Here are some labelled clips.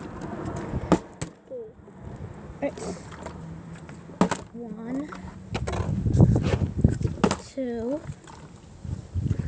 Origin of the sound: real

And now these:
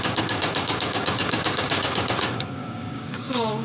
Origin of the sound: fake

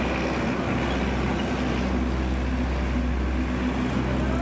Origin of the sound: real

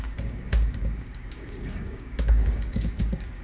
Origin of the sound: fake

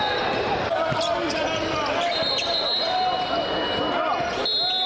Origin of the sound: real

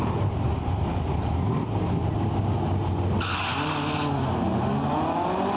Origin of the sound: real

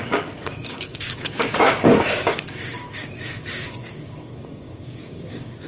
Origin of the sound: fake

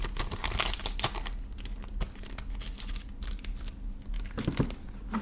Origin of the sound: real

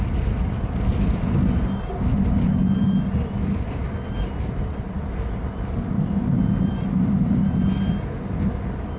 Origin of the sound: real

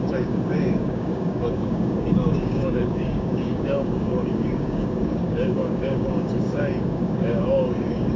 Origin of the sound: fake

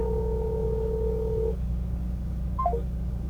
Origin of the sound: fake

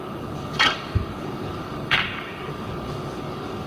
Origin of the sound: fake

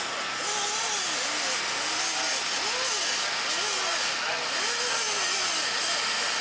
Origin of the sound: real